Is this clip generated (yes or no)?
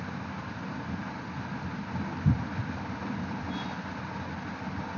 no